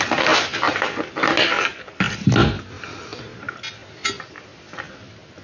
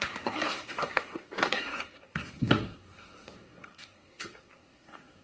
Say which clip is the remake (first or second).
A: second